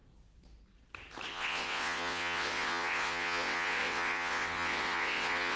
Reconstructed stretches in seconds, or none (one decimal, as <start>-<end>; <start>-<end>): 1.3-5.6